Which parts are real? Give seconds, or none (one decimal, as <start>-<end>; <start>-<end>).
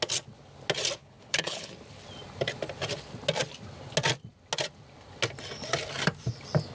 0.0-1.0; 1.7-6.7